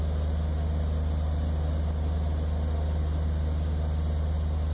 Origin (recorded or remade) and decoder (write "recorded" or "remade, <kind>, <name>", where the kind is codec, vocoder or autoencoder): recorded